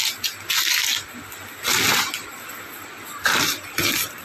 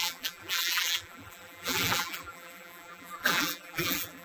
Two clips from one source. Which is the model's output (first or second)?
second